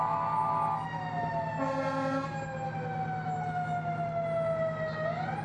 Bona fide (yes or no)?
yes